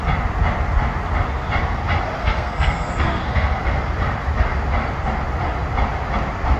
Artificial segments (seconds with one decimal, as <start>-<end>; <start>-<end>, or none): 2.2-3.6

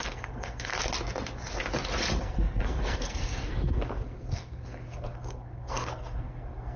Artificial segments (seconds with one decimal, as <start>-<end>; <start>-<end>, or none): 0.0-0.7; 2.2-6.8

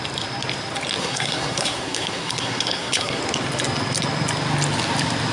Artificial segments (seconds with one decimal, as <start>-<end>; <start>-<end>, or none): 1.0-3.2

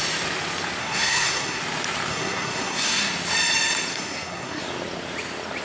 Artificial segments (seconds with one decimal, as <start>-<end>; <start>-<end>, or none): 0.8-1.6; 2.1-3.1; 3.9-4.6